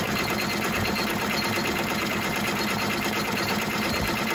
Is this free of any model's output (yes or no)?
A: no